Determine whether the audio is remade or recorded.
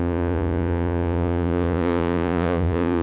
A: remade